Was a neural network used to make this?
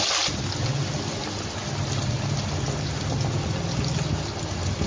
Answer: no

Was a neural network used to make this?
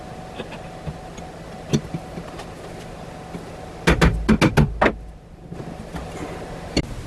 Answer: no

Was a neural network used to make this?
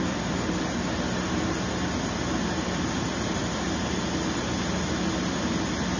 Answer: no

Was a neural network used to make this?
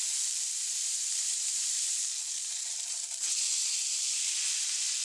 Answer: yes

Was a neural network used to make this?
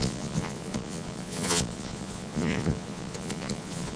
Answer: yes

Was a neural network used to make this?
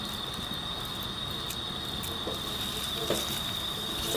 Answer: no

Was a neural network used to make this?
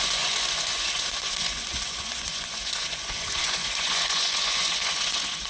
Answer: yes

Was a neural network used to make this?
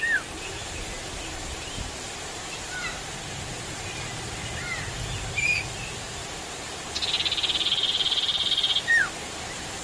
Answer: yes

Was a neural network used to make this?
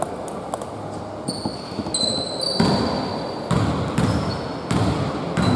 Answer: no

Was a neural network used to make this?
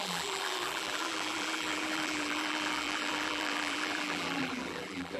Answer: yes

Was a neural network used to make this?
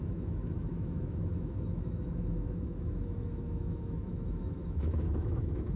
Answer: yes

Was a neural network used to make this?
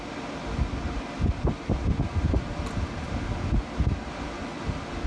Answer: no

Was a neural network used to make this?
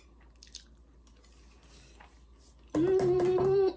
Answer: no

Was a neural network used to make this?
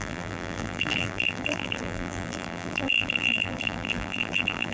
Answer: yes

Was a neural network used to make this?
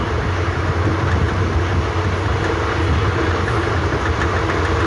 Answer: no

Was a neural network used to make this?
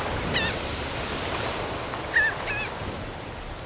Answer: no